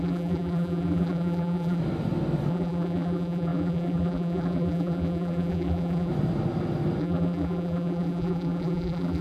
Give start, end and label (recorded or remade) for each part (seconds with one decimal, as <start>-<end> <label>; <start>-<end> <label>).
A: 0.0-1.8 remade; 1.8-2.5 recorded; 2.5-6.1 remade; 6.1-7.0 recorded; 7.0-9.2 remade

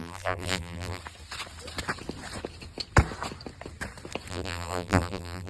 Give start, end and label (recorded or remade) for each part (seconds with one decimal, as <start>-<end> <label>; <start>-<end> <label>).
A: 0.0-1.0 remade; 1.0-4.3 recorded; 4.3-5.5 remade

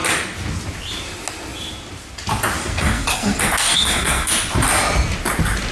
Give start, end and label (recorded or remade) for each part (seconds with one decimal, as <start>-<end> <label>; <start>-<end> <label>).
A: 0.0-2.6 recorded; 2.6-4.3 remade; 4.3-5.7 recorded

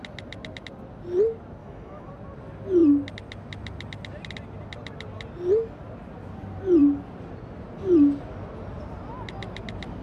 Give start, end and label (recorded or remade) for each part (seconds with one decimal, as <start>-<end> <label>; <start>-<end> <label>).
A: 0.0-1.6 recorded; 1.6-2.1 remade; 2.1-10.0 recorded

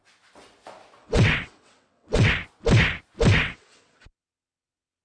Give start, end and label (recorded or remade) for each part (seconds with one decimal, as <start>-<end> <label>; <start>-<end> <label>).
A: 0.0-1.0 recorded; 1.0-2.3 remade; 2.3-3.3 recorded; 3.3-5.0 remade

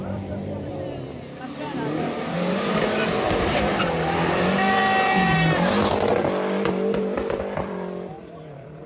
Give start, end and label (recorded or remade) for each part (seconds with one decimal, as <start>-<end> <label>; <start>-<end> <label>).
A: 0.0-4.8 remade; 4.8-7.0 recorded; 7.0-8.9 remade

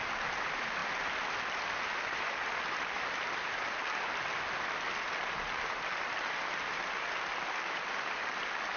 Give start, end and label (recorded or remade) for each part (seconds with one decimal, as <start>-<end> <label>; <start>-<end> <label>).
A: 0.0-8.8 recorded

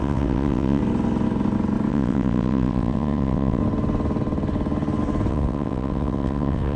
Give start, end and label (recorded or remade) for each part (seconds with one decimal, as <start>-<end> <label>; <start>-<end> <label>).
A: 0.0-0.8 remade; 0.8-1.9 recorded; 1.9-3.6 remade; 3.6-5.3 recorded; 5.3-6.8 remade